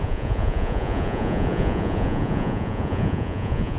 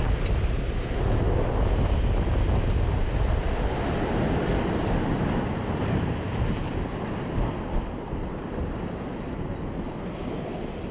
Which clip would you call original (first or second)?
second